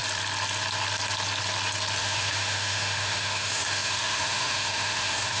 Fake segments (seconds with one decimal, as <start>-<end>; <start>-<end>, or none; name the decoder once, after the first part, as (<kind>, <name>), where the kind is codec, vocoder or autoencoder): 2.0-5.4 (autoencoder, DAC-VAE)